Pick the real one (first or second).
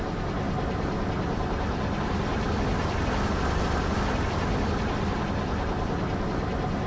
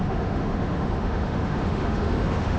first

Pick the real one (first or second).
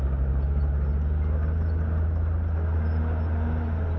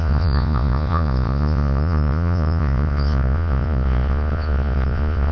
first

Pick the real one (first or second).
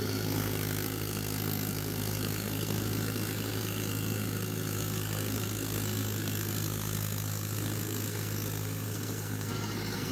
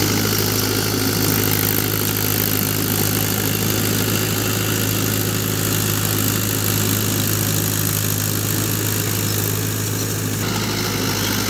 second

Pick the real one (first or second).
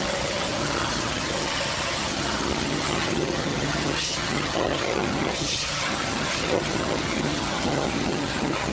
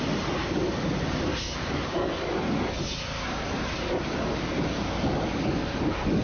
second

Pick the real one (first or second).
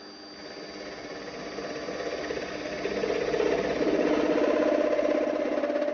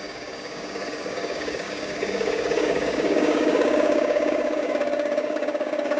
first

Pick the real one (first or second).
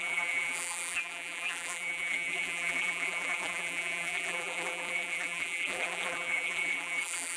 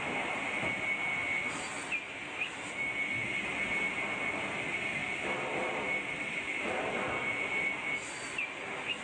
second